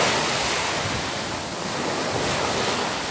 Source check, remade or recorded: recorded